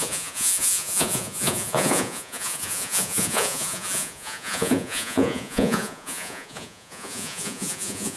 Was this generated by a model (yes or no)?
yes